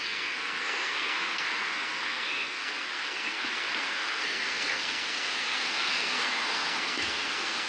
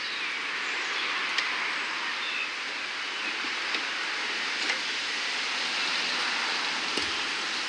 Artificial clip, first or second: first